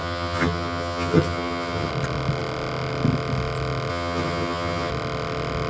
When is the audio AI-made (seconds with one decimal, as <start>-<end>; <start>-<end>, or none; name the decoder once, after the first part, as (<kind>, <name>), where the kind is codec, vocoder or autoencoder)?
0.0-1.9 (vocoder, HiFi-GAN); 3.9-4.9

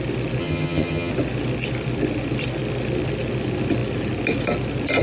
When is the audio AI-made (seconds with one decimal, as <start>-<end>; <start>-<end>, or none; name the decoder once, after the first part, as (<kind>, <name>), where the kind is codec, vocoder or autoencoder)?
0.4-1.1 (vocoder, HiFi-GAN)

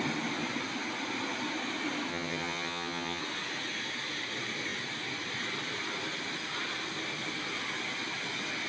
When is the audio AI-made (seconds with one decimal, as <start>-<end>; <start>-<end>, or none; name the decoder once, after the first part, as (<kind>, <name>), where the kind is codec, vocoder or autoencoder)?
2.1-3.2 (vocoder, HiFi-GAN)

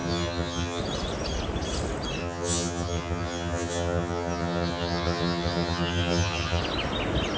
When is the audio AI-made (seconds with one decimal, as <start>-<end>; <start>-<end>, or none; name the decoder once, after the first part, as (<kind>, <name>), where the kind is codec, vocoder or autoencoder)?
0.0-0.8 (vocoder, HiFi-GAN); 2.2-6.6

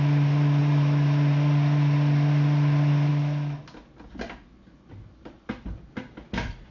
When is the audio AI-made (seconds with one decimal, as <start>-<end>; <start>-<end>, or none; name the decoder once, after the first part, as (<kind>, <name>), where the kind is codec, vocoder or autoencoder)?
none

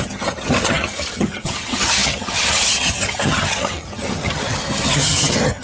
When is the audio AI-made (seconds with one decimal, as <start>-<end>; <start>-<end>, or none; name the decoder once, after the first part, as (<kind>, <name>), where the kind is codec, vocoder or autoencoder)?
0.0-5.6 (vocoder, HiFi-GAN)

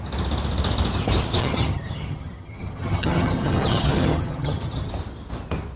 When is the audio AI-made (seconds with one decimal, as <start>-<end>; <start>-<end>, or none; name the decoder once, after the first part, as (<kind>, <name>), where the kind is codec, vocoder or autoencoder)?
1.4-4.9 (vocoder, HiFi-GAN)

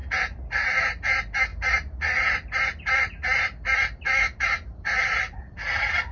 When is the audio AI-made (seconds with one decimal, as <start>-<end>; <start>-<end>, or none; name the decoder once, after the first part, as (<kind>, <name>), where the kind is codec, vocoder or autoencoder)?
none